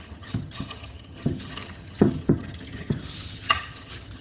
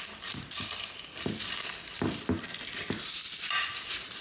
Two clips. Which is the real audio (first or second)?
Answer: second